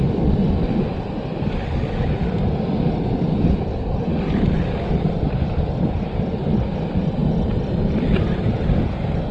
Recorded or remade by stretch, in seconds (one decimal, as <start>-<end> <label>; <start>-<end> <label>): 0.0-0.9 remade; 0.9-2.4 recorded; 2.4-4.1 remade; 4.1-4.8 recorded; 4.8-7.2 remade; 7.2-7.9 recorded; 7.9-9.3 remade